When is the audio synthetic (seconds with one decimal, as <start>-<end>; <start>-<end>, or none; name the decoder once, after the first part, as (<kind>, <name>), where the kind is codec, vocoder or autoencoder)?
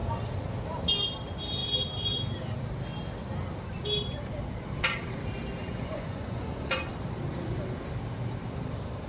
5.6-6.9 (vocoder, Vocos)